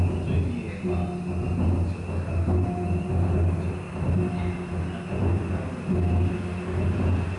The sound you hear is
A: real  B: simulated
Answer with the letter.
A